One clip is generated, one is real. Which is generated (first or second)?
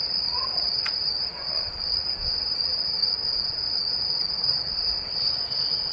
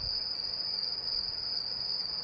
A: first